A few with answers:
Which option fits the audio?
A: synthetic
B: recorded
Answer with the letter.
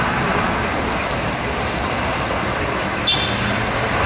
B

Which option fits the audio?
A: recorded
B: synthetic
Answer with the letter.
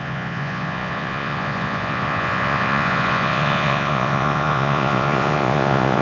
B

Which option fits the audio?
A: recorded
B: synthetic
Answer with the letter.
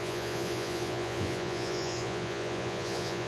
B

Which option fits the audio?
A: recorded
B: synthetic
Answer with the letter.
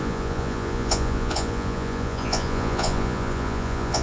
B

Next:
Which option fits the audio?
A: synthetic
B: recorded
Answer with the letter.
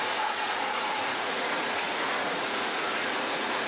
A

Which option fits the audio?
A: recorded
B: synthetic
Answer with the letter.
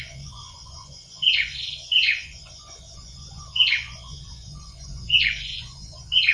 B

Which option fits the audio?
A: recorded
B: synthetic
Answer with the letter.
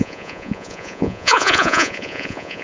B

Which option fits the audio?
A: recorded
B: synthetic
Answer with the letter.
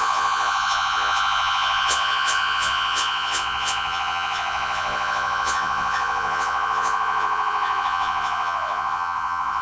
B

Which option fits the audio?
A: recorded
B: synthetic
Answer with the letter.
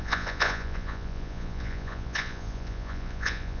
B